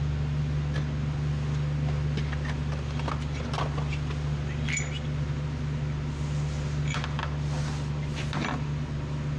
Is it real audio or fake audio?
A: real